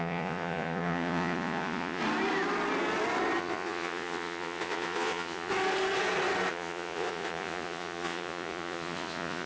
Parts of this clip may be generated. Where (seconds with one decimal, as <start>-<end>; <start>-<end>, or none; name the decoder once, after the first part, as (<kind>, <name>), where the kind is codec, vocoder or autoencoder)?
0.0-2.0 (vocoder, Vocos); 3.4-5.5; 6.5-9.5

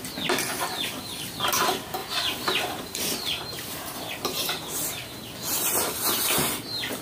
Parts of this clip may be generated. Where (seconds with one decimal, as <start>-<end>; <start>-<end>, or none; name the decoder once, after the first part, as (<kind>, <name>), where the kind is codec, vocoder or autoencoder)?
2.0-4.0 (vocoder, BigVGAN v2)